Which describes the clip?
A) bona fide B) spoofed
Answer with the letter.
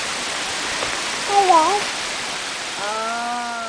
A